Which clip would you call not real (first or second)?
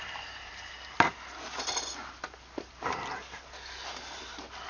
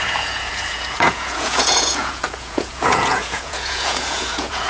second